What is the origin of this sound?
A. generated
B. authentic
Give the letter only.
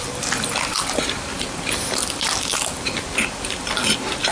B